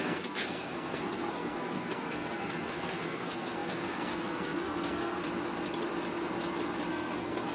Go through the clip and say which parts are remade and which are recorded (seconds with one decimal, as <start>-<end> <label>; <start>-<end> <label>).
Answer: 0.0-5.2 remade; 5.2-6.9 recorded; 6.9-7.5 remade